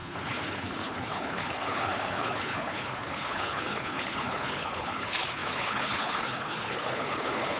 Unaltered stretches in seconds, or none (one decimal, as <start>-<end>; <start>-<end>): none

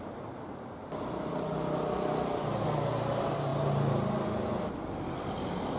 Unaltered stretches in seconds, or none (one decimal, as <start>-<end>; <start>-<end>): 0.0-5.8

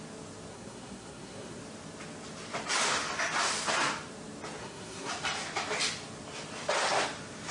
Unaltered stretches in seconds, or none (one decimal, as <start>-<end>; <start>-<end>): 0.0-0.5; 1.6-4.6; 5.1-7.5

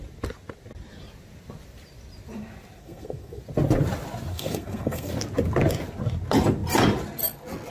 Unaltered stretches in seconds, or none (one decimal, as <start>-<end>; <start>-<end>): 0.0-2.8; 3.4-4.3; 5.1-7.7

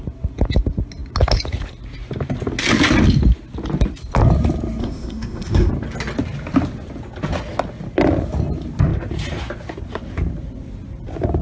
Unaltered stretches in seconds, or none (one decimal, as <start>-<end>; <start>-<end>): 0.0-4.8; 5.7-11.4

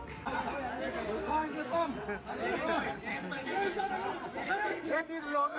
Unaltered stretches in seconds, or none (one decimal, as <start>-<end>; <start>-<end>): 0.0-1.2; 1.9-3.1; 3.9-4.4